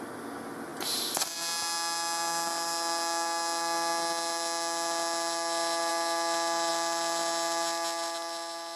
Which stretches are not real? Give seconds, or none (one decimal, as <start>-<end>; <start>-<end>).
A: none